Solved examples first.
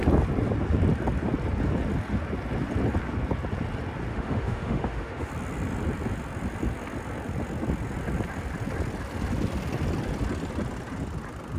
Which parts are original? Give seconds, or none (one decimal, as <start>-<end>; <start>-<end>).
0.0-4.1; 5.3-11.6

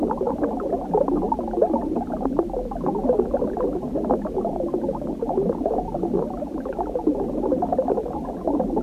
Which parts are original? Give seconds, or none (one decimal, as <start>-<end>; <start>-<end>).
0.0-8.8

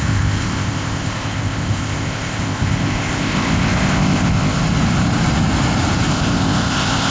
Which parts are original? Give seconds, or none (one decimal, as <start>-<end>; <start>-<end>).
4.6-6.1

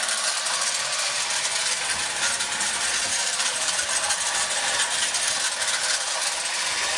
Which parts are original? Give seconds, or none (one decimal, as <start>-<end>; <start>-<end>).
0.0-3.1; 3.7-7.0

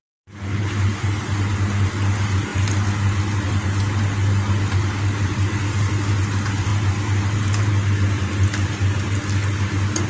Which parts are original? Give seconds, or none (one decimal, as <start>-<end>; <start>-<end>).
0.0-5.2; 6.1-6.7; 7.7-10.1